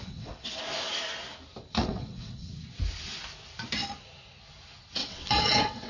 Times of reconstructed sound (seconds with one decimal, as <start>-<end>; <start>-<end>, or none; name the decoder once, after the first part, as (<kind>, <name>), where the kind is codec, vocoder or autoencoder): 0.0-0.6 (vocoder, WaveNeXt); 1.8-2.5; 5.0-5.9